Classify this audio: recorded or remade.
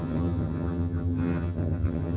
remade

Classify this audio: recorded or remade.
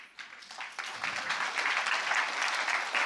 recorded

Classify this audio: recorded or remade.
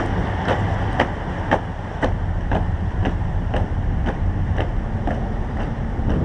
recorded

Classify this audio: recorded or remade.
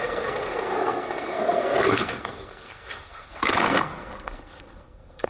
remade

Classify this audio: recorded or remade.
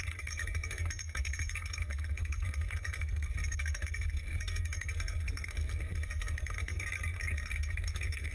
remade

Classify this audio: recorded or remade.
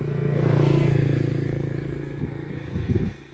remade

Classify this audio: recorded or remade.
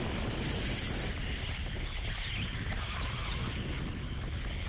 recorded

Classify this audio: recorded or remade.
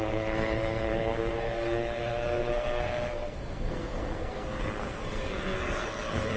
remade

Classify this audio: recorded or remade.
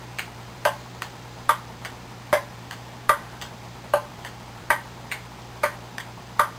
remade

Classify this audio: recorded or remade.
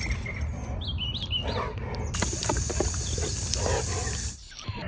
recorded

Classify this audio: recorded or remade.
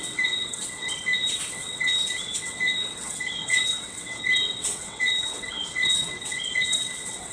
remade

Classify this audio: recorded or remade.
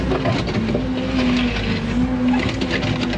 recorded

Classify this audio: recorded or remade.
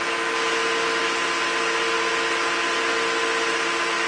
recorded